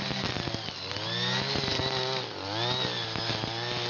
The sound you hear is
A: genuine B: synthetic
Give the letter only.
A